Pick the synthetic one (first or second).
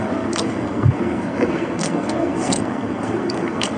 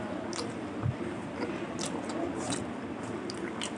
first